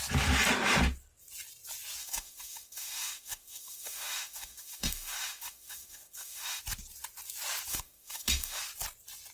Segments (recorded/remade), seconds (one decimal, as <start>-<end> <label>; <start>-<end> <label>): 0.0-2.0 recorded; 2.0-6.6 remade; 6.6-7.7 recorded; 7.7-8.6 remade; 8.6-9.3 recorded